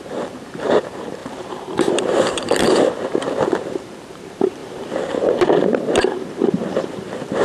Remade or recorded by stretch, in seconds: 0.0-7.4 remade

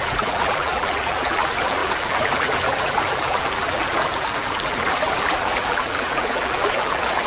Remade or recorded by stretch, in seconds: 0.0-7.3 remade